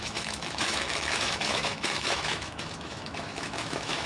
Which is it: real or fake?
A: fake